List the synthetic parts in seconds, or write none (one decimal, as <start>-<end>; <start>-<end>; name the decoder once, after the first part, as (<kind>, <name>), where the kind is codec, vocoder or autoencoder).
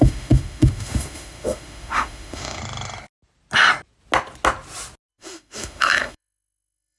0.0-2.6 (autoencoder, DAC-VAE); 5.1-7.0